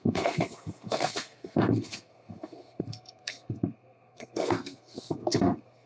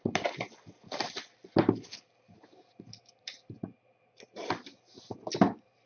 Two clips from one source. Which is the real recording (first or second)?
second